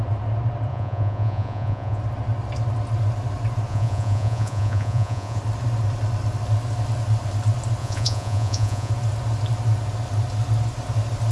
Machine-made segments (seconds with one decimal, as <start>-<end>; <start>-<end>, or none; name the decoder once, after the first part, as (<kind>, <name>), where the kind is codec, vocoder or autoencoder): 0.7-2.0 (vocoder, Vocos); 3.7-5.4; 7.8-8.9